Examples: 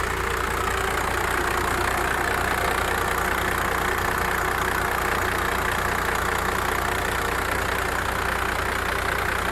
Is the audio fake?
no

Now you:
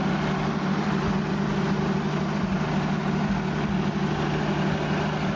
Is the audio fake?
no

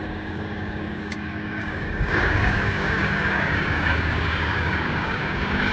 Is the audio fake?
yes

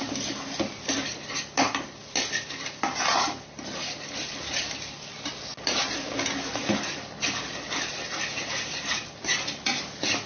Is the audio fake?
no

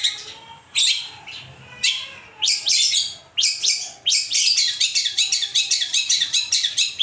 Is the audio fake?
no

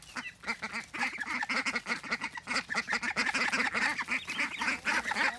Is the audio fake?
no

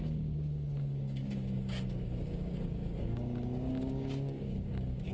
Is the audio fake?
yes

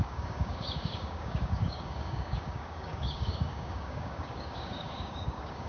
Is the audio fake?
yes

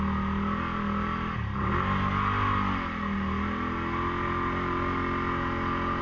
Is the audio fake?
no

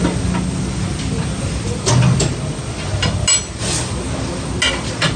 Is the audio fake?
no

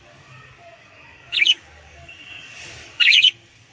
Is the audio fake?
yes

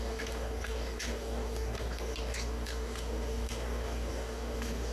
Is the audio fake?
yes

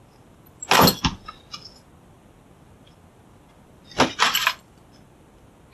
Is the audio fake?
no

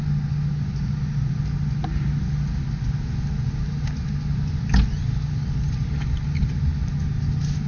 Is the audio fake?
no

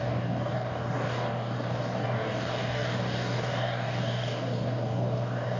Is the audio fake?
yes